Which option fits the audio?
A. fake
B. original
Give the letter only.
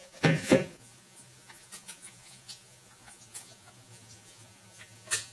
A